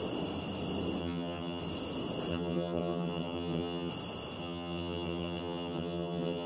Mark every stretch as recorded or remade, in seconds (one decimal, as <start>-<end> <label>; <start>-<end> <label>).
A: 0.0-1.0 recorded; 1.0-1.6 remade; 1.6-2.3 recorded; 2.3-3.9 remade; 3.9-4.4 recorded; 4.4-6.5 remade